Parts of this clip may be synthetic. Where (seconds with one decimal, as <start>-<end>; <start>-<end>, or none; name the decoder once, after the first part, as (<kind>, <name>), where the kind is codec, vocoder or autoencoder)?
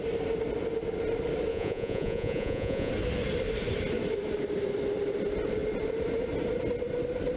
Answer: 1.5-2.9 (vocoder, Vocos)